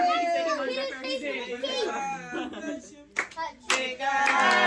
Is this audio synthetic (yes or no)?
no